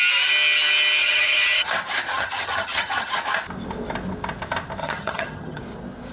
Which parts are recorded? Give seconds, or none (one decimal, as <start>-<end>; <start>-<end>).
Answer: 0.0-1.0; 1.7-2.1; 3.1-4.8; 5.6-6.1